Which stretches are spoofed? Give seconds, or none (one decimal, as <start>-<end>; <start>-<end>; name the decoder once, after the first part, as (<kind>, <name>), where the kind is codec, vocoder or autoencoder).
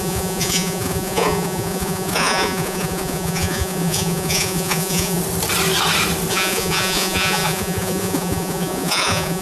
0.0-5.2 (vocoder, Vocos); 6.3-9.4